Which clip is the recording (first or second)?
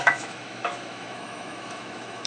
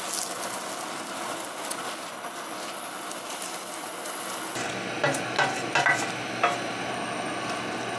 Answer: second